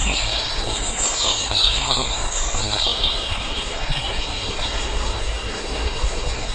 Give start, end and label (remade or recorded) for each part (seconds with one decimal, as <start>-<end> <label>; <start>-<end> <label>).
0.0-6.5 remade